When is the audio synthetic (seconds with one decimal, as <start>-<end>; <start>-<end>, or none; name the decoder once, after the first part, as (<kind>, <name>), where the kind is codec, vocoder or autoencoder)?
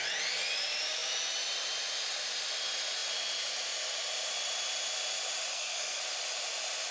5.5-6.0 (codec, SNAC)